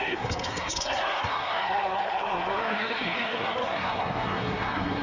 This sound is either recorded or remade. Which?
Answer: remade